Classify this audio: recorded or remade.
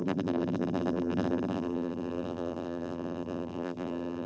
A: remade